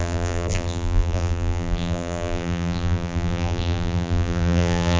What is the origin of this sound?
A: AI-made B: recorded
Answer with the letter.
A